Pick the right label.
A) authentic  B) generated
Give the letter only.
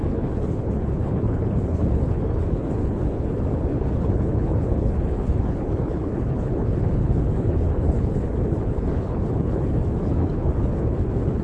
B